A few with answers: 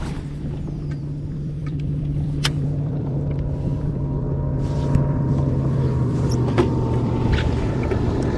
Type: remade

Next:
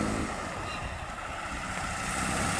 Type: recorded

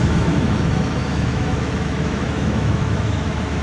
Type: remade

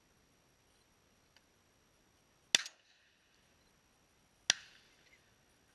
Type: recorded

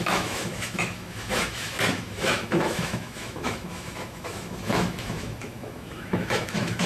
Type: remade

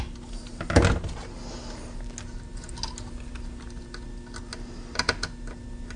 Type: recorded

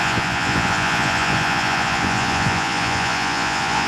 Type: remade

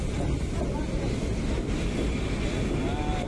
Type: recorded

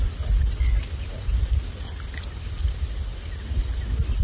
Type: recorded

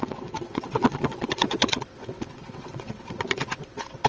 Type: remade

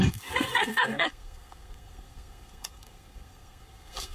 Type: remade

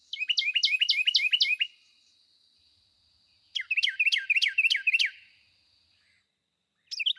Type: recorded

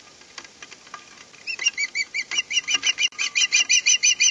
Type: recorded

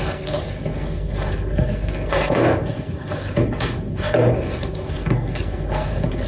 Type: remade